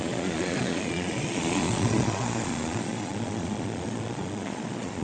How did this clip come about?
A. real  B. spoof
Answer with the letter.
B